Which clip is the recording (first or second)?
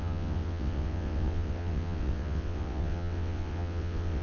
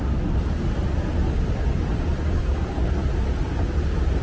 second